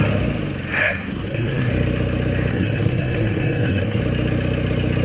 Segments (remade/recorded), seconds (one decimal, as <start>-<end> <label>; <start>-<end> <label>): 0.0-0.8 recorded; 0.8-1.7 remade; 1.7-2.5 recorded; 2.5-4.0 remade; 4.0-5.0 recorded